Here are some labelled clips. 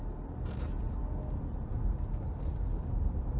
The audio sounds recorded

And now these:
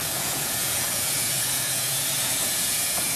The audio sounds remade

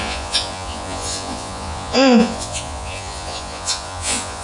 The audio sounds remade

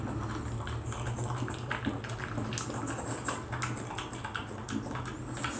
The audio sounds recorded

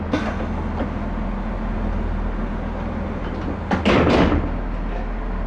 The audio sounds recorded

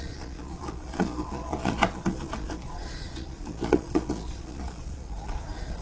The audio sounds remade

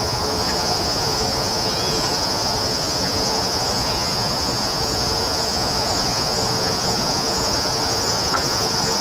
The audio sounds remade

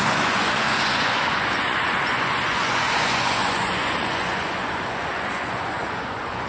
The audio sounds remade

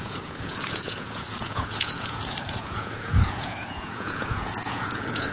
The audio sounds remade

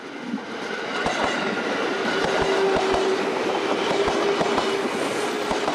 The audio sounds recorded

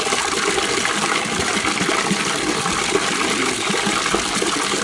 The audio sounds recorded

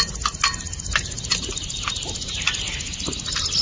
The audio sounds recorded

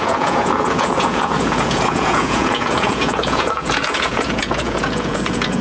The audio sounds remade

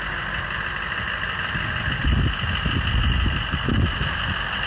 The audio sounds recorded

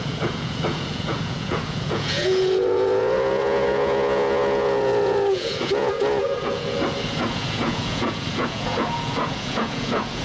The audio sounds remade